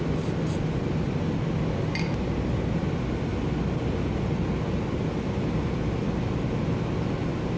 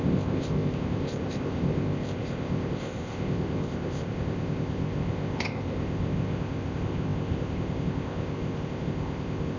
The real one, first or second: first